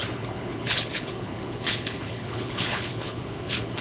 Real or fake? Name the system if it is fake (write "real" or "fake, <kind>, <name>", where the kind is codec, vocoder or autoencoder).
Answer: fake, codec, HILCodec